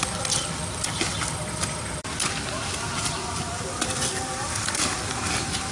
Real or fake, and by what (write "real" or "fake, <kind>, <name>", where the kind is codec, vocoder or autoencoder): real